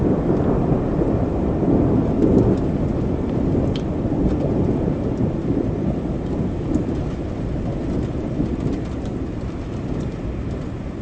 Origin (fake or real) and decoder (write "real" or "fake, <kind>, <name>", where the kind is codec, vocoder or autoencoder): real